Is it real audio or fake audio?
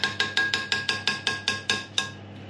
real